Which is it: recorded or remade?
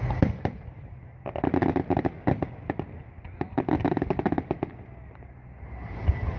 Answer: recorded